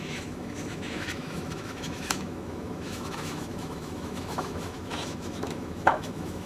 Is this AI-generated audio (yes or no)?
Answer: yes